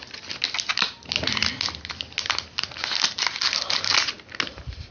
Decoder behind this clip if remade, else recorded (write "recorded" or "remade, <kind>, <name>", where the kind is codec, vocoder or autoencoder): recorded